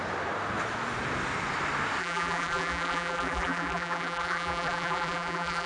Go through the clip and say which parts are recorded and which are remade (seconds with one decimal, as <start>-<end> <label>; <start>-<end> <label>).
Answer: 0.0-2.0 recorded; 2.0-5.7 remade